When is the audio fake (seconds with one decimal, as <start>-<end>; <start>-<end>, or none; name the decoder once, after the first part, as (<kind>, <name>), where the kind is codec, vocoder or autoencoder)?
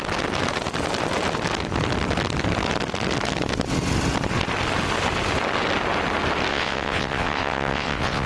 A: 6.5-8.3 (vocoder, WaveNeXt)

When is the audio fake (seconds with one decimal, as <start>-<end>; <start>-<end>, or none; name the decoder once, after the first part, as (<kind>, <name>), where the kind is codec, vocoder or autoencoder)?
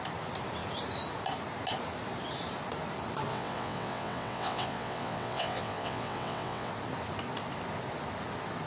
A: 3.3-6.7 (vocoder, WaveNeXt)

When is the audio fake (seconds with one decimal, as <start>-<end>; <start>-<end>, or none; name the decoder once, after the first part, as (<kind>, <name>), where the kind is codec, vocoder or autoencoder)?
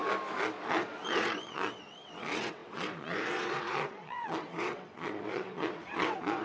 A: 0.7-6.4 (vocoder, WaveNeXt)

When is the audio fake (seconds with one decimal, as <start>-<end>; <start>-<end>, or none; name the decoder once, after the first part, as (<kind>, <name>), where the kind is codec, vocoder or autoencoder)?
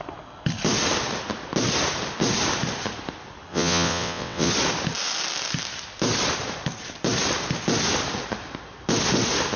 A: 3.5-4.5 (vocoder, WaveNeXt)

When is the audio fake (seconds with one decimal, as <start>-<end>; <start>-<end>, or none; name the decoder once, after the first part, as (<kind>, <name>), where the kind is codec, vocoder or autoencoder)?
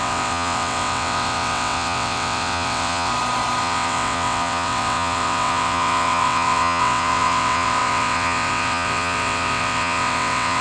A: 0.0-3.1 (vocoder, WaveNeXt); 3.6-10.6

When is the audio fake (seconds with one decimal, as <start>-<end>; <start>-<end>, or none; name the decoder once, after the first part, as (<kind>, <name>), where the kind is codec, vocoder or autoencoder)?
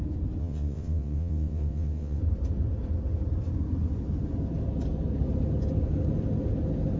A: 0.4-2.2 (vocoder, WaveNeXt)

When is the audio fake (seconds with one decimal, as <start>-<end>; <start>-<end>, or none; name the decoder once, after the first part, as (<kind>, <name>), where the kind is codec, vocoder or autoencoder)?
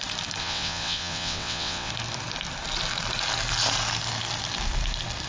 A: 0.4-1.9 (vocoder, WaveNeXt)